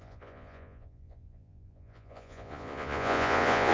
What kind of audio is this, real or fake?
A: fake